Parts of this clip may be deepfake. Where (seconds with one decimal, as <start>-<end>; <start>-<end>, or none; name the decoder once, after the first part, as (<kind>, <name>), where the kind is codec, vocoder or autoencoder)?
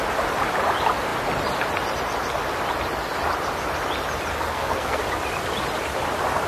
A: 4.3-5.0 (codec, SNAC)